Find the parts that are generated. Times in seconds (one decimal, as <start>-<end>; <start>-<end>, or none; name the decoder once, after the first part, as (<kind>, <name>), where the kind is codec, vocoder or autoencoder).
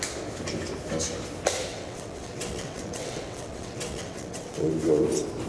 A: 1.7-4.7 (vocoder, WaveNeXt)